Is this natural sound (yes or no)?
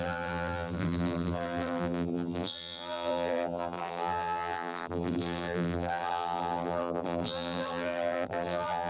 no